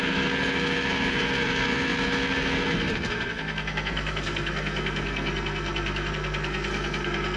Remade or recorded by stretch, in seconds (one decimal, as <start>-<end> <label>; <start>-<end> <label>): 0.0-7.4 remade